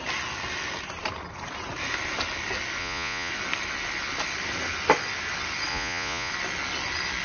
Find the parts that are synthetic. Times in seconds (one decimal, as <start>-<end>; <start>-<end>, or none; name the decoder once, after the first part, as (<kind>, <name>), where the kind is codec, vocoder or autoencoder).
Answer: 2.8-3.3 (vocoder, Vocos); 5.7-6.3